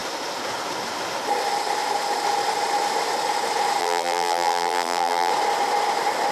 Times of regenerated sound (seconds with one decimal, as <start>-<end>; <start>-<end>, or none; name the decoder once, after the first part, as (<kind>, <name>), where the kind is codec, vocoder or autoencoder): 3.8-5.3 (vocoder, BigVGAN v2)